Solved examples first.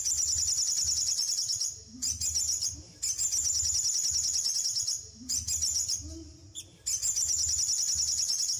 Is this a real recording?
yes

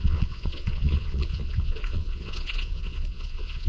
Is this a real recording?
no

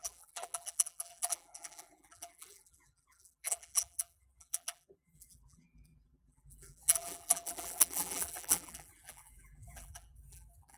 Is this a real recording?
no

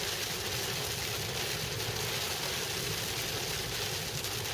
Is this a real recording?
yes